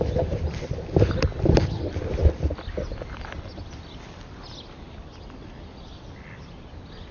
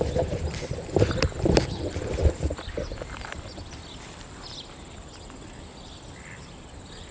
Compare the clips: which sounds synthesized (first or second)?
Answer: second